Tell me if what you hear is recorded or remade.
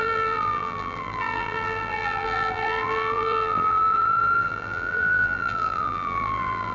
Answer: remade